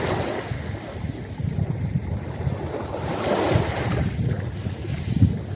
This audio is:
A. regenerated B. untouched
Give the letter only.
B